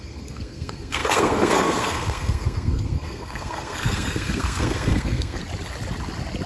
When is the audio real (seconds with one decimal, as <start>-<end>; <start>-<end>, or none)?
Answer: 5.4-6.5